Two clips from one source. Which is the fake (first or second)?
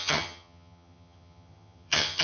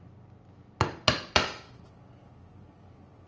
first